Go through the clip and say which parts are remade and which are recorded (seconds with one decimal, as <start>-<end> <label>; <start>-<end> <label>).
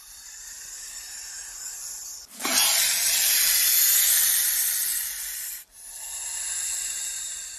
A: 0.0-7.6 recorded